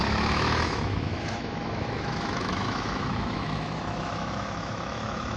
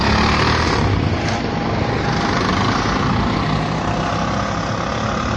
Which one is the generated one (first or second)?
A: first